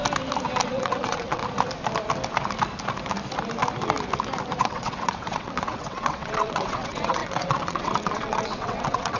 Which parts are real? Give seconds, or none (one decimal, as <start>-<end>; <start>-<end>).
0.0-0.7; 1.4-4.6

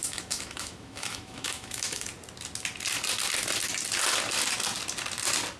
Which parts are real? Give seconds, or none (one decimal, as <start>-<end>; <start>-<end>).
2.1-5.6

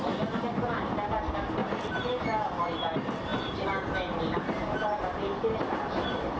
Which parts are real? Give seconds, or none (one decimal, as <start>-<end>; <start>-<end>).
0.0-6.4

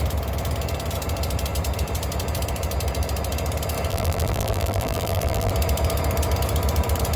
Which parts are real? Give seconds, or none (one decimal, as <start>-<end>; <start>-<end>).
0.0-3.9; 5.5-7.2

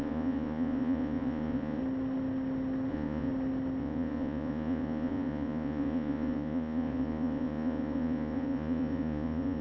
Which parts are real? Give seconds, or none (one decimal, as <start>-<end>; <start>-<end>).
1.8-2.9; 3.3-3.8

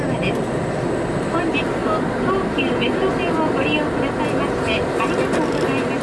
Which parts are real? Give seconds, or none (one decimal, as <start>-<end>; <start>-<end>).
0.0-6.0

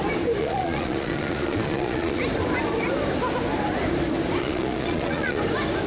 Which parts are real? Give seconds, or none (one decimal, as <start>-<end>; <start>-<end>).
0.0-0.4; 2.2-4.4; 5.4-5.9